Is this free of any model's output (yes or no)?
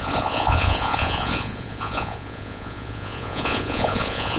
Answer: no